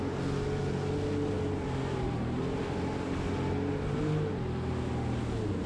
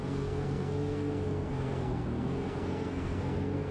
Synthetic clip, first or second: second